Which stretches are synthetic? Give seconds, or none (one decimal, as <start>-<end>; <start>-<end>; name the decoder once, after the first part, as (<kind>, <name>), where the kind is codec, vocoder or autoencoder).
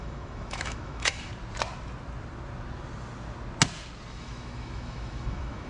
0.0-1.3 (autoencoder, DAC-VAE); 4.1-5.7